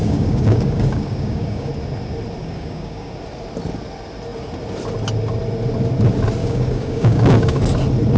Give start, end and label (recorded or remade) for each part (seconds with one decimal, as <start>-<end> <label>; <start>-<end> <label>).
0.0-1.7 remade; 1.7-2.4 recorded; 2.4-3.1 remade; 3.1-6.4 recorded; 6.4-7.6 remade; 7.6-8.2 recorded